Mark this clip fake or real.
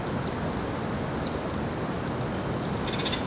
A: real